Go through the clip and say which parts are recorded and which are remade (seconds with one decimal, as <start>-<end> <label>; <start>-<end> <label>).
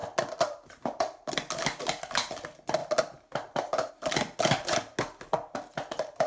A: 0.0-6.3 recorded